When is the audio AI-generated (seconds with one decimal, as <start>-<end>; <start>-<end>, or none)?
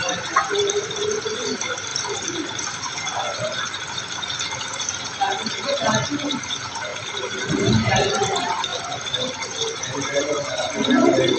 none